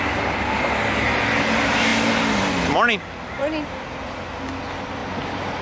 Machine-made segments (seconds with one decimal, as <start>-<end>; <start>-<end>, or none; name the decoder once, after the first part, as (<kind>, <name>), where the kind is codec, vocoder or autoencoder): none